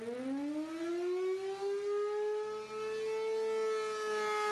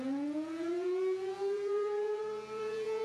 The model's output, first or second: second